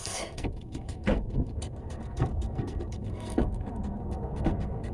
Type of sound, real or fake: fake